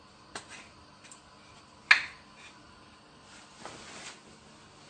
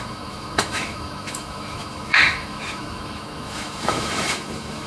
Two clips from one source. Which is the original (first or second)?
first